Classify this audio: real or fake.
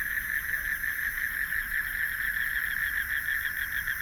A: real